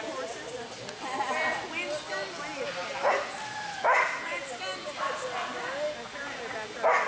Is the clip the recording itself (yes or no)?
yes